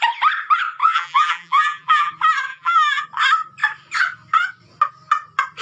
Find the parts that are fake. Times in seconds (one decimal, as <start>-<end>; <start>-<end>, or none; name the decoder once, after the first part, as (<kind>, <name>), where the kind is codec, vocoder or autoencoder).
0.8-2.1 (vocoder, BigVGAN v2); 2.5-3.0

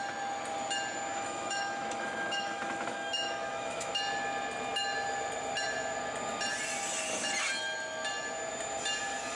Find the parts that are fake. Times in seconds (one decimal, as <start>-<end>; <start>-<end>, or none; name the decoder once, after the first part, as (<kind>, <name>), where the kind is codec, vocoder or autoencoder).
1.1-3.9 (autoencoder, DAC-VAE)

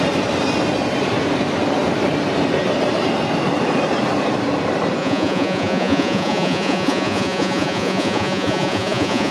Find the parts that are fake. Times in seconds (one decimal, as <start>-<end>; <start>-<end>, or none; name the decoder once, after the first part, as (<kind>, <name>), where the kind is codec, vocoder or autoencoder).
5.0-9.3 (vocoder, Vocos)

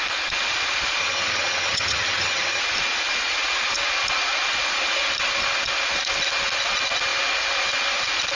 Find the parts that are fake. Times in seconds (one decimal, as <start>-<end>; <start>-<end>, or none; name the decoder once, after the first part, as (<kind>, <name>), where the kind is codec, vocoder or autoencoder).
1.0-2.6 (vocoder, HiFi-GAN)

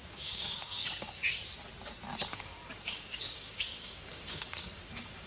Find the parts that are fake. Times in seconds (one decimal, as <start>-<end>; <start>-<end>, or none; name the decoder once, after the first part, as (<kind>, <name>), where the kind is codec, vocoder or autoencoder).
0.0-1.2 (codec, DAC); 2.3-5.3